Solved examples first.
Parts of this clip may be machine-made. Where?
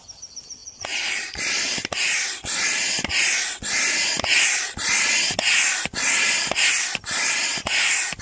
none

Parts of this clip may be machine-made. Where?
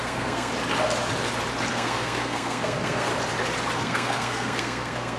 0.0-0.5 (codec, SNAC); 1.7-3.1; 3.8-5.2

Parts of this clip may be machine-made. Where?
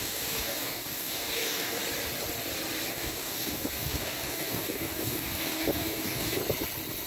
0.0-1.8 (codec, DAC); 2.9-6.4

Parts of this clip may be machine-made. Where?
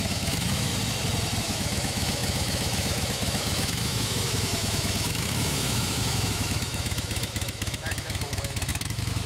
0.0-0.7 (autoencoder, DAC-VAE); 1.4-9.3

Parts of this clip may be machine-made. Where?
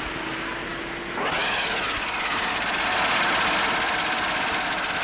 none